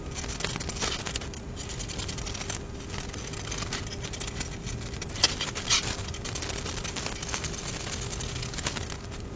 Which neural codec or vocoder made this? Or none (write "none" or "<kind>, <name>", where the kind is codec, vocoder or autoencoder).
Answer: none